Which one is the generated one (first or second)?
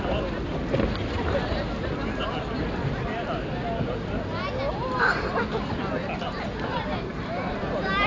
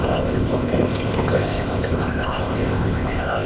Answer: second